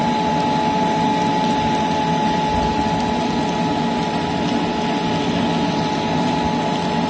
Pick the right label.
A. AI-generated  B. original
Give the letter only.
B